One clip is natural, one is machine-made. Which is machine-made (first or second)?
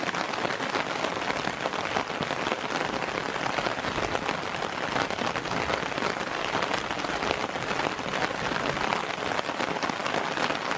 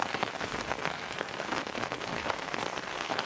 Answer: second